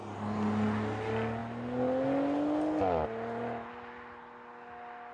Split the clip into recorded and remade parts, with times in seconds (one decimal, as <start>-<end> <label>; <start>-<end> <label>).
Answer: 0.0-5.1 recorded